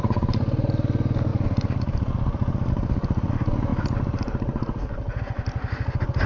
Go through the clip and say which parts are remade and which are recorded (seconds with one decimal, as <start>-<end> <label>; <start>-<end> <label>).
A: 0.0-6.3 recorded